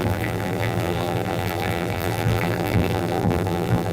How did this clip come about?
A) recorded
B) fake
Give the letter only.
B